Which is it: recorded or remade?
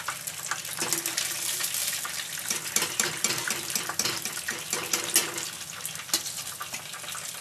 recorded